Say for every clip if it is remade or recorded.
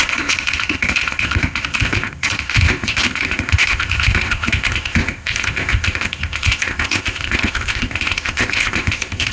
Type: remade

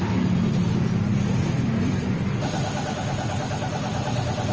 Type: recorded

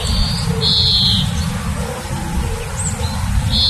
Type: recorded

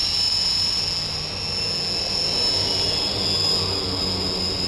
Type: recorded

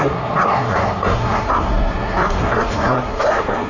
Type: remade